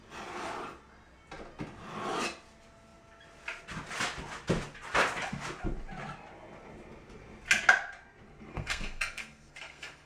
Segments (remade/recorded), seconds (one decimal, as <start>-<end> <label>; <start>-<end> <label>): 0.0-8.5 recorded; 8.5-10.1 remade